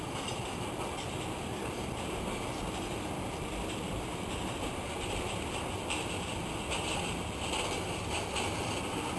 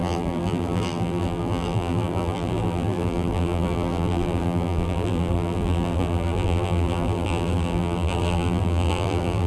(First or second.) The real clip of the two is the first